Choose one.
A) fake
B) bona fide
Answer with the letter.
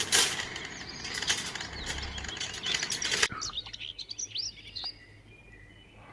B